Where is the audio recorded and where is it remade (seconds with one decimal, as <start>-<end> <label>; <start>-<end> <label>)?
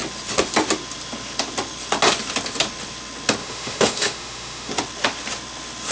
0.0-3.4 recorded; 3.4-4.7 remade; 4.7-5.9 recorded